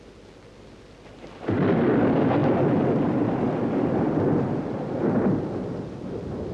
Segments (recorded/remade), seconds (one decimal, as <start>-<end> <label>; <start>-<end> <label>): 0.0-6.5 recorded